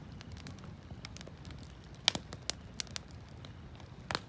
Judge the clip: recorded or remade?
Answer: recorded